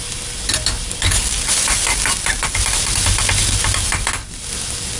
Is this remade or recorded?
recorded